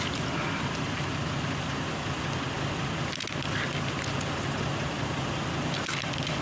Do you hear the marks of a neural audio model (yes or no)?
no